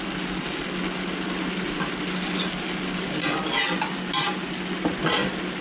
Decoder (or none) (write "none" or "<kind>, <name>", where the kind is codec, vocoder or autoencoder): none